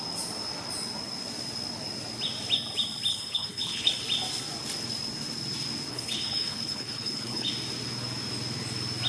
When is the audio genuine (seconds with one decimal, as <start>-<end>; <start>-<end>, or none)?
0.0-3.1; 3.9-5.9; 7.5-9.1